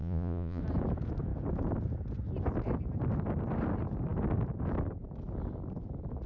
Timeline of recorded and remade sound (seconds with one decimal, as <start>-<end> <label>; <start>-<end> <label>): 0.0-0.6 remade; 0.6-6.3 recorded